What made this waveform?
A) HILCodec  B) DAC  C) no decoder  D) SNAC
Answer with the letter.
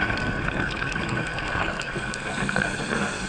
D